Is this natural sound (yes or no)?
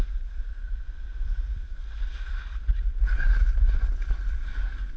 yes